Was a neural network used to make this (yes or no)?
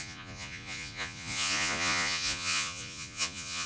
yes